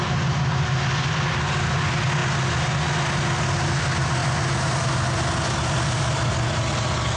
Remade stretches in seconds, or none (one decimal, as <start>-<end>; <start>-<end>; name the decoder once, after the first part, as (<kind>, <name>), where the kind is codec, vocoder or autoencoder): none